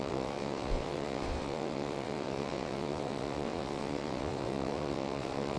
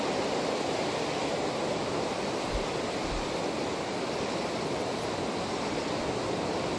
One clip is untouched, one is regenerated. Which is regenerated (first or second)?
first